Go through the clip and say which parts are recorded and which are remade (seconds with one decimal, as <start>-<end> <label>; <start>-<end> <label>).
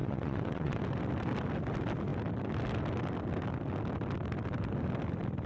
0.0-0.8 remade; 0.8-5.5 recorded